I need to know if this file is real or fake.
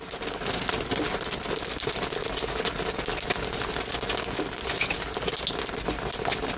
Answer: real